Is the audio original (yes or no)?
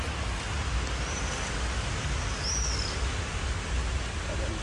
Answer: yes